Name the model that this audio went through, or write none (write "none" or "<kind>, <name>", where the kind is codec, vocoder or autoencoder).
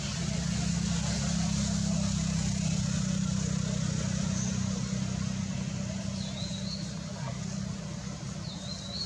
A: none